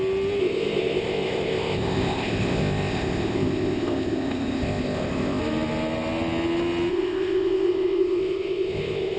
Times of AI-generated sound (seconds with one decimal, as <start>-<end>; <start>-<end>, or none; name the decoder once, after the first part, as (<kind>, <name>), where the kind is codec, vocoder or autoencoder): 0.4-5.4 (codec, ZipCodec); 6.9-9.2